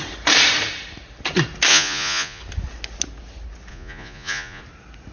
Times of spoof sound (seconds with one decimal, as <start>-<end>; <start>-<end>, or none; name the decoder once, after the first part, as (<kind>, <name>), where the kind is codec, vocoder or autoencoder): 1.7-2.4 (vocoder, Vocos); 3.7-4.6